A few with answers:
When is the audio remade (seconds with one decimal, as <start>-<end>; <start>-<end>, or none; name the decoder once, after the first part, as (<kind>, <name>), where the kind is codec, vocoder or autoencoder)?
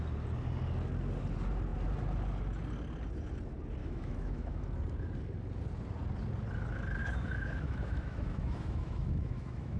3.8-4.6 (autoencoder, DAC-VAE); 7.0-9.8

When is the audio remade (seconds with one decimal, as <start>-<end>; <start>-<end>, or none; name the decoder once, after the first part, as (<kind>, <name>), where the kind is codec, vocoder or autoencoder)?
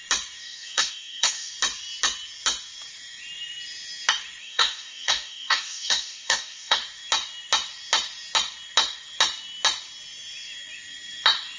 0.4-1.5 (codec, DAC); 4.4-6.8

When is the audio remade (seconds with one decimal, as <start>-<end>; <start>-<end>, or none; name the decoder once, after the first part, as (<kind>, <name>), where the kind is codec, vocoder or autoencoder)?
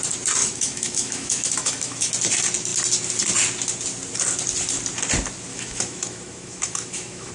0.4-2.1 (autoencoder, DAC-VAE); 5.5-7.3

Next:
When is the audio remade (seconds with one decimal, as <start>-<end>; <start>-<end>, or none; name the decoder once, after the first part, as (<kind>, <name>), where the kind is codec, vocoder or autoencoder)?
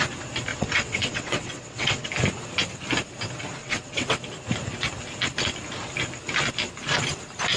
0.5-2.1 (vocoder, WaveNeXt); 3.6-4.2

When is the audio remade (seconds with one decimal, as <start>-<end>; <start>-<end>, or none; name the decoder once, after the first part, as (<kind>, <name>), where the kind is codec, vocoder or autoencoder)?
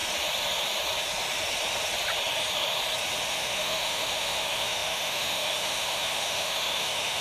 3.3-7.2 (autoencoder, DAC-VAE)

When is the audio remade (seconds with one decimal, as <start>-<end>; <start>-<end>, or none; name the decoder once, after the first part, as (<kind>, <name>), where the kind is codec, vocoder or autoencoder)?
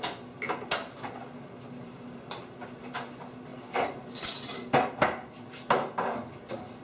1.8-2.3 (vocoder, BigVGAN v2); 3.5-4.1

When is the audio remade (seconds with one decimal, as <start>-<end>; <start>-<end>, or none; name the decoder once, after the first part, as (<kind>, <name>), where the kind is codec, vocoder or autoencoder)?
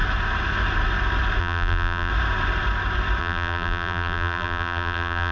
1.4-2.1 (vocoder, BigVGAN v2); 3.2-5.3